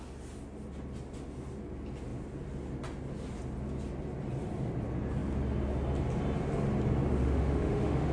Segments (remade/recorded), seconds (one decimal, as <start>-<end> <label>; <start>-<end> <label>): 0.0-7.2 recorded; 7.2-8.1 remade